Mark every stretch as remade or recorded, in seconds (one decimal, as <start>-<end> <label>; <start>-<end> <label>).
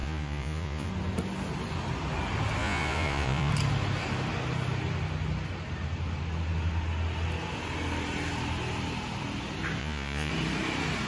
0.0-0.9 remade; 0.9-2.6 recorded; 2.6-3.5 remade; 3.5-9.8 recorded; 9.8-10.3 remade; 10.3-11.1 recorded